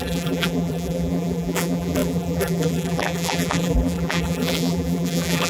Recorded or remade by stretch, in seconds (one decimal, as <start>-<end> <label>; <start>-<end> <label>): 0.0-5.5 remade